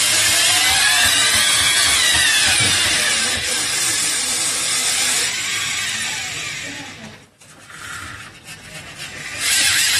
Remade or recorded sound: recorded